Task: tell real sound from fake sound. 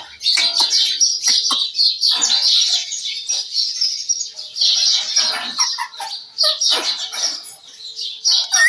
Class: real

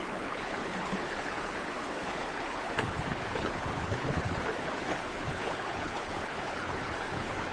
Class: fake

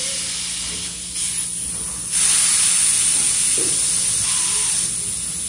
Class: real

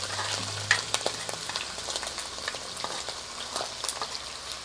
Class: real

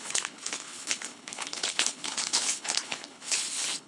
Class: fake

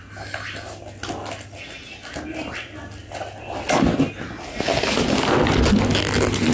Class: real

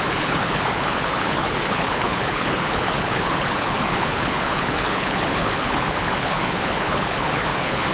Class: fake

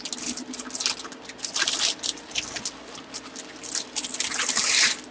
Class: real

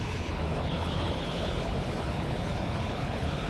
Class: fake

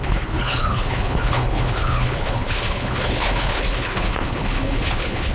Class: fake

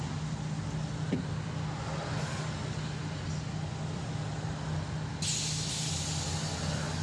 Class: real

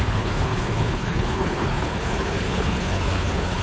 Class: fake